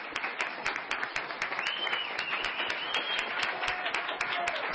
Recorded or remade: recorded